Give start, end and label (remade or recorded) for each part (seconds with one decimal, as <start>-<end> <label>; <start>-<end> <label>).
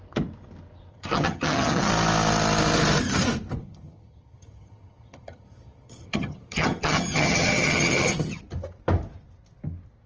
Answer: 0.0-0.9 recorded; 0.9-1.9 remade; 1.9-3.6 recorded; 3.6-8.4 remade; 8.4-10.1 recorded